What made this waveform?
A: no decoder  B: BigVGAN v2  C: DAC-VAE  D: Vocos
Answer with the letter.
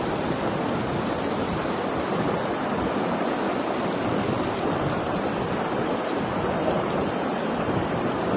A